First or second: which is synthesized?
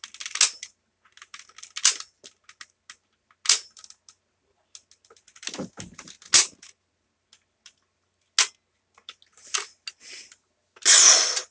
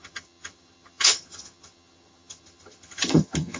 second